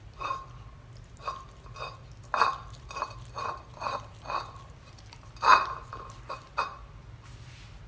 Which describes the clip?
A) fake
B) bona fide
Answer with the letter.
B